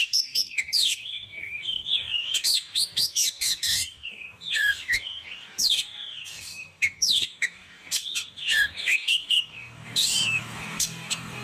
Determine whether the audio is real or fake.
fake